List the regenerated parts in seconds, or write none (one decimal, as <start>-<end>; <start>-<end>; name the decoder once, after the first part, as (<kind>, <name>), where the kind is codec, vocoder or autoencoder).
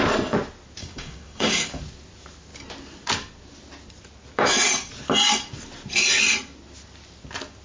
0.8-1.8 (codec, DAC)